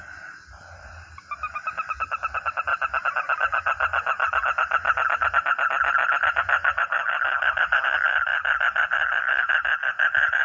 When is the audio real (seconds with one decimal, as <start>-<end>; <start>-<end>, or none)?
0.0-8.3; 9.5-10.4